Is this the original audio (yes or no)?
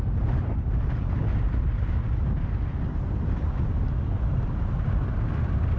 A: yes